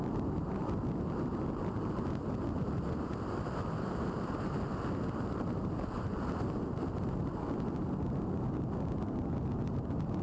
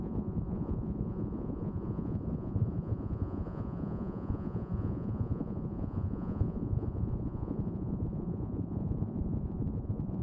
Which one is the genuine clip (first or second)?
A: first